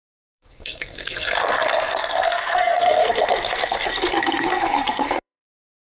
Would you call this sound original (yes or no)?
no